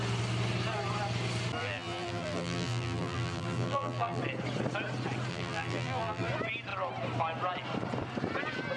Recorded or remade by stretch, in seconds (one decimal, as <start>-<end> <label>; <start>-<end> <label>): 0.0-1.6 recorded; 1.6-4.2 remade; 4.2-5.3 recorded; 5.3-6.3 remade; 6.3-8.8 recorded

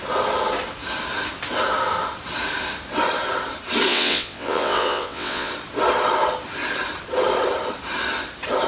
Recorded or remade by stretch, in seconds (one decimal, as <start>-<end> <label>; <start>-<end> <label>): 0.0-3.9 recorded; 3.9-5.5 remade; 5.5-8.7 recorded

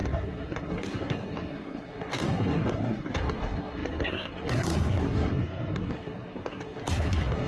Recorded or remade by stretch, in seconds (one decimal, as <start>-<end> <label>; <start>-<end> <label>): 0.0-7.5 remade

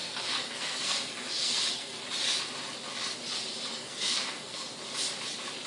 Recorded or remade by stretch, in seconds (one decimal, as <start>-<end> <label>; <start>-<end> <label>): 0.0-2.0 remade; 2.0-3.7 recorded; 3.7-4.7 remade; 4.7-5.7 recorded

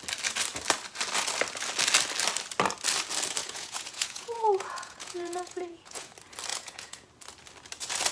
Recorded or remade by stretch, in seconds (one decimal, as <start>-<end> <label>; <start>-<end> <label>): 0.0-3.4 recorded; 3.4-6.1 remade; 6.1-6.5 recorded; 6.5-7.1 remade; 7.1-8.1 recorded

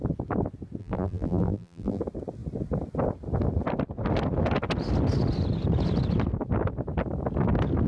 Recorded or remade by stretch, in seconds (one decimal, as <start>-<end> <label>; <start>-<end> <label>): 0.0-0.8 recorded; 0.8-2.0 remade; 2.0-7.9 recorded

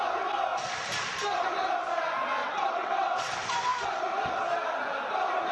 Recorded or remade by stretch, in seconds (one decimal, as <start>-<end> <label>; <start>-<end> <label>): 0.0-2.4 recorded; 2.4-3.3 remade; 3.3-5.5 recorded